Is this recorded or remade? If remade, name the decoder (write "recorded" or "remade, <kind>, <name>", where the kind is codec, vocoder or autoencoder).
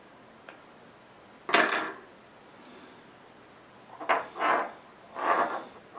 recorded